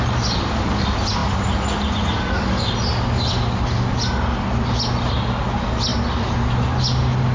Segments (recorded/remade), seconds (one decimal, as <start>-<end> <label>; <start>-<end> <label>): 0.0-7.3 recorded